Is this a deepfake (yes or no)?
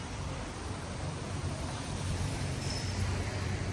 yes